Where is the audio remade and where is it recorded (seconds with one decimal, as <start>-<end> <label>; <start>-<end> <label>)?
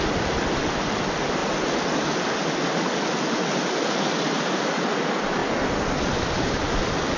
0.0-7.2 recorded